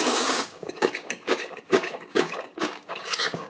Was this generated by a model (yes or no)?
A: yes